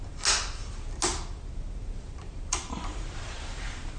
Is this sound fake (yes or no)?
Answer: no